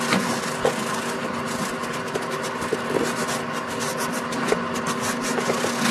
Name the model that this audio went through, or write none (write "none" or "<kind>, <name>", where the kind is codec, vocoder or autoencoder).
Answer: none